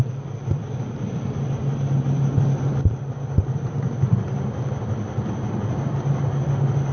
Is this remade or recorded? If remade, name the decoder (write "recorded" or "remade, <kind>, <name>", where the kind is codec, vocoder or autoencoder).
recorded